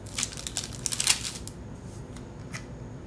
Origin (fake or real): real